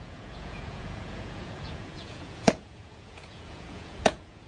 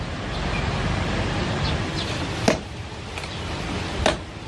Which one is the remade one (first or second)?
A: first